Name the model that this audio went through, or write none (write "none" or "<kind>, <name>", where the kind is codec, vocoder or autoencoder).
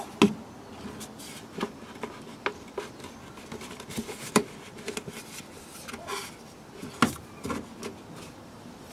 none